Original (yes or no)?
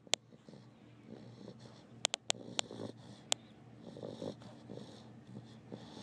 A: yes